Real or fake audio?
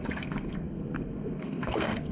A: fake